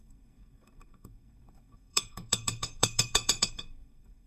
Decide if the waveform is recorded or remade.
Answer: remade